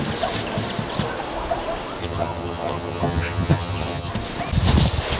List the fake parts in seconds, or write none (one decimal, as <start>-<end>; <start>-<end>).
2.0-4.1